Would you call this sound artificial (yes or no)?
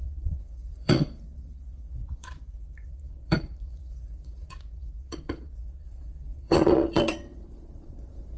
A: yes